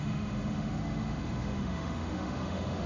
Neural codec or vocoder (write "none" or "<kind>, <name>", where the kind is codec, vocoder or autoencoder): autoencoder, DAC-VAE